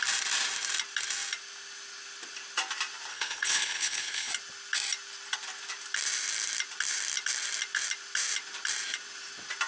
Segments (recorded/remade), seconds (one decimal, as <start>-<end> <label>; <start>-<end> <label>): 0.0-3.1 recorded; 3.1-4.3 remade; 4.3-9.7 recorded